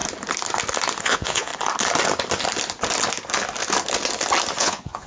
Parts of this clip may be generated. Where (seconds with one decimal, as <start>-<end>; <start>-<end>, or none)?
1.0-1.5; 4.6-5.1